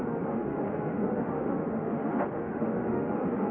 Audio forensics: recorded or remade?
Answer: remade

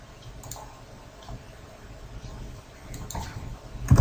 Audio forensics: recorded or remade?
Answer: remade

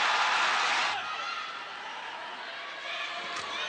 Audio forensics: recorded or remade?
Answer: recorded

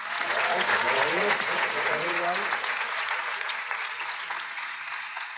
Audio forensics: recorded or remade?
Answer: remade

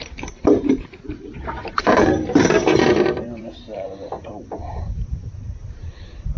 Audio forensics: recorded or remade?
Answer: remade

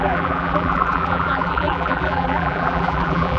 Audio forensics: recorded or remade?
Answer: remade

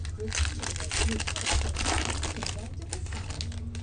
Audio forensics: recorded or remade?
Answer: recorded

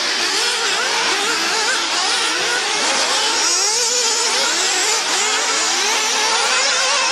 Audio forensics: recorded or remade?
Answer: recorded